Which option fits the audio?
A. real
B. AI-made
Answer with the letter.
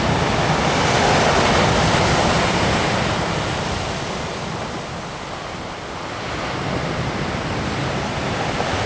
A